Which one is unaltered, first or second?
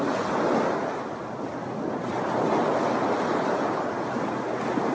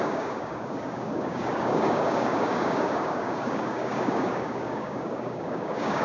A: first